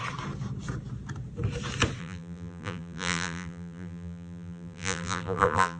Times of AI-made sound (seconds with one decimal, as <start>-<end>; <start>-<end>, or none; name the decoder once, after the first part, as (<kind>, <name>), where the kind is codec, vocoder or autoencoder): 2.0-5.8 (vocoder, BigVGAN v2)